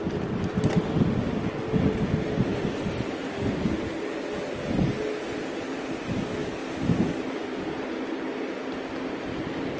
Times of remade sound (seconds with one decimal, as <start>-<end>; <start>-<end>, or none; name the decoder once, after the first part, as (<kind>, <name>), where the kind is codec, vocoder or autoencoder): none